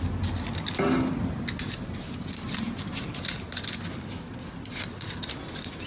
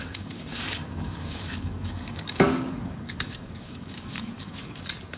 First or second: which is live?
first